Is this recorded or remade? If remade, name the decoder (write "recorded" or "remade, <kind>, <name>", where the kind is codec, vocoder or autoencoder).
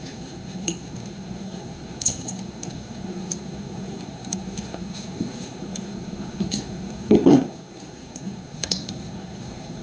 remade, codec, SNAC